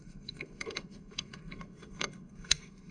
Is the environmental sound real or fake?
fake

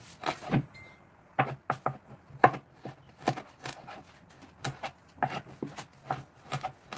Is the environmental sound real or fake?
real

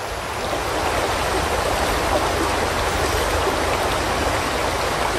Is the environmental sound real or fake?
real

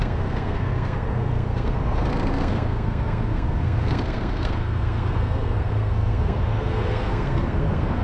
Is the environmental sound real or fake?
fake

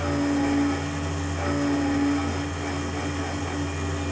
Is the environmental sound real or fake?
real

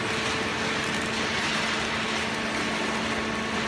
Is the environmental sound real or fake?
real